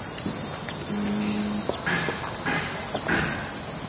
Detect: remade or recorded recorded